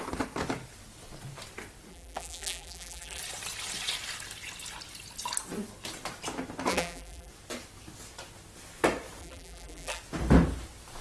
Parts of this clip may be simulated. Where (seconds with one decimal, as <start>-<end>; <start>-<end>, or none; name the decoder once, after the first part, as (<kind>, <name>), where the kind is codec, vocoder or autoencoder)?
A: 1.9-3.2 (vocoder, BigVGAN v2); 6.7-7.3; 9.2-10.0